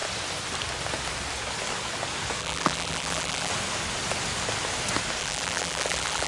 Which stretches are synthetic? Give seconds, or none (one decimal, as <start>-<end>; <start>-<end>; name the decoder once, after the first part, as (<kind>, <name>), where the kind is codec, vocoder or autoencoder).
2.4-3.5 (vocoder, BigVGAN v2); 5.2-6.3